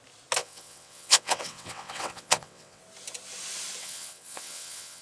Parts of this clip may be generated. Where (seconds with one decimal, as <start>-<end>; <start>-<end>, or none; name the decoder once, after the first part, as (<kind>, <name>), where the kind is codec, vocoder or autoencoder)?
0.4-2.8 (vocoder, WaveNeXt); 3.8-5.0